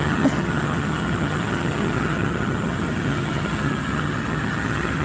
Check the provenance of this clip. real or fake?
fake